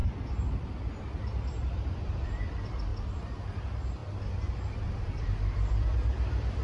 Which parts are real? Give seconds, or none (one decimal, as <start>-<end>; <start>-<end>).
0.0-0.9; 4.0-4.6